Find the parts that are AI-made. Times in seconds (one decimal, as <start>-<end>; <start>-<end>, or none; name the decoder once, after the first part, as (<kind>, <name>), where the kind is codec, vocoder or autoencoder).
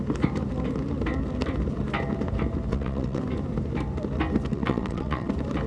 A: 2.7-3.2 (vocoder, WaveNeXt); 4.5-5.3